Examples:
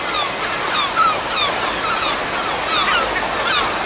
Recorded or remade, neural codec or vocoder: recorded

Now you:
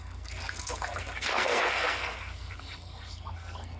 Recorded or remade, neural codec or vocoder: remade, codec, SNAC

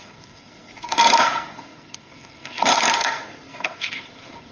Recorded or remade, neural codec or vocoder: remade, codec, SNAC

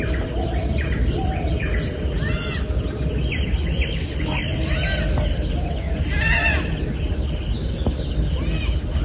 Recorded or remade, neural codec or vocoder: recorded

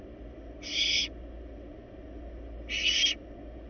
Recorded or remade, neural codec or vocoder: recorded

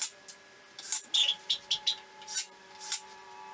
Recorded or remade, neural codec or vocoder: recorded